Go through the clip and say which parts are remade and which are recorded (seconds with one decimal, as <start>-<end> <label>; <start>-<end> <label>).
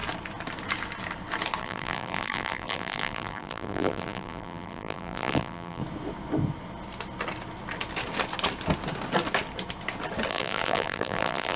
0.0-1.6 recorded; 1.6-5.8 remade; 5.8-10.3 recorded; 10.3-11.6 remade